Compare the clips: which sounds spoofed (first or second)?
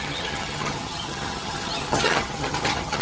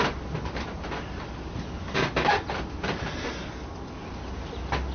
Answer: first